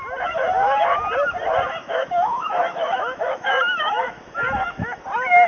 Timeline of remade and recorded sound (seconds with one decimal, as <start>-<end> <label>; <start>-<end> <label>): 0.0-0.4 recorded; 0.4-1.0 remade; 1.0-1.8 recorded; 1.8-5.0 remade; 5.0-5.5 recorded